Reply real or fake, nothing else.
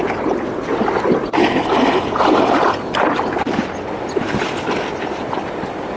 real